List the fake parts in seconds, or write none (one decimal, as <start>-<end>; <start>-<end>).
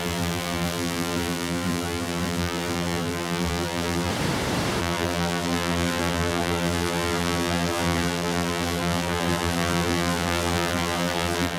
0.0-4.1; 4.8-11.6